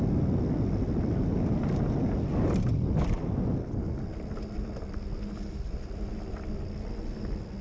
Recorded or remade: recorded